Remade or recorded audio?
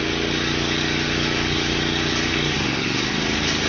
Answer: remade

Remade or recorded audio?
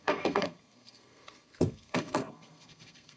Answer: remade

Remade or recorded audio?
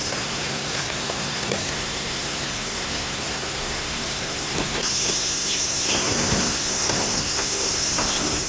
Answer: remade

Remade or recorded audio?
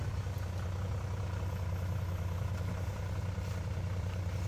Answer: recorded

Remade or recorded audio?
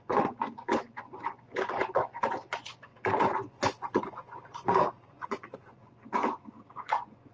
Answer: remade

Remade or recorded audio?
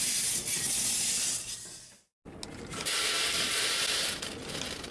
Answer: recorded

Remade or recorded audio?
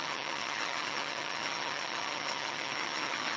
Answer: remade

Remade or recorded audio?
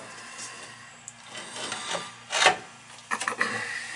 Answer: recorded